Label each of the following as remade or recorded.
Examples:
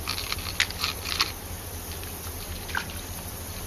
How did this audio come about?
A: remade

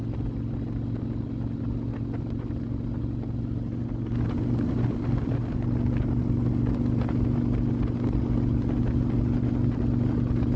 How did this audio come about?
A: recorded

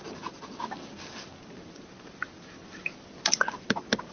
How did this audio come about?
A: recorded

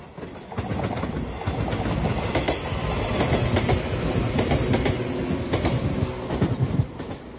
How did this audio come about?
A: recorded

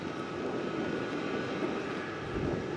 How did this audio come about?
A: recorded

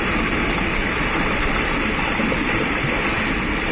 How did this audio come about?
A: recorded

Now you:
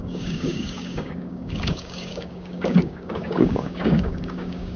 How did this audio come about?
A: remade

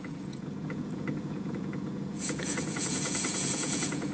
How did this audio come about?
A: remade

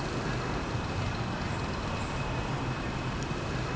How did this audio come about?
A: recorded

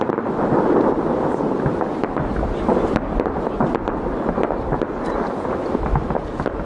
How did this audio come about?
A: recorded